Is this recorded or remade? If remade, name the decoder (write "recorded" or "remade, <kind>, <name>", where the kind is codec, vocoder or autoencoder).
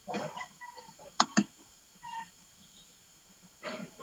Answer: remade, codec, DAC